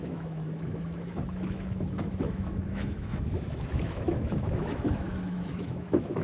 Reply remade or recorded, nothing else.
remade